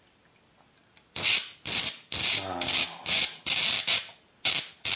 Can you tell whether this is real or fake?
real